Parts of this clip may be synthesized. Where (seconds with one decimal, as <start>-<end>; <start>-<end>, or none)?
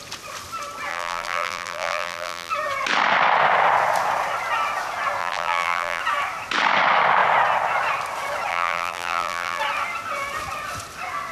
0.9-2.5; 5.2-6.0; 8.5-9.6